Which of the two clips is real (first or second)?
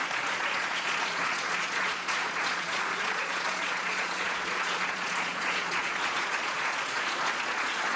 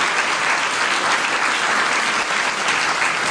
second